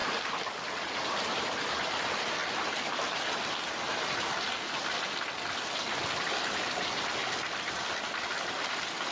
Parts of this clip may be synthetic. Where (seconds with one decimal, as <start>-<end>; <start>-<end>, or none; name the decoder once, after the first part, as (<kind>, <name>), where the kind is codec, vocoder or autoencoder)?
0.5-7.2 (vocoder, BigVGAN v2); 7.8-9.1